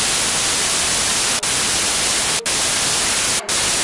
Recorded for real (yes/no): yes